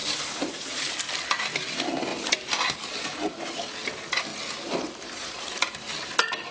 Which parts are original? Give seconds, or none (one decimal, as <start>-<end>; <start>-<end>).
0.9-2.1; 2.6-6.5